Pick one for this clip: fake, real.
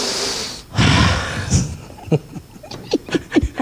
real